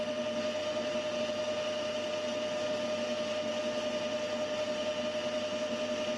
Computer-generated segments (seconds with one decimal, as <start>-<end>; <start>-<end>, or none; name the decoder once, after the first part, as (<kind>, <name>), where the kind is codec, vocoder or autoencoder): none